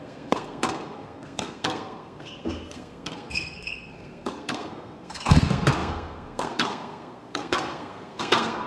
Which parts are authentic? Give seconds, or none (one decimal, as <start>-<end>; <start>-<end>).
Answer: none